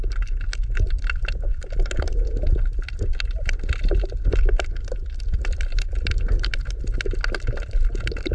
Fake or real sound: real